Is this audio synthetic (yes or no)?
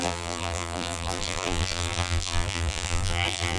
yes